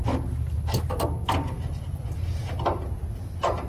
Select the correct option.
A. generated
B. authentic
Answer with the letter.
B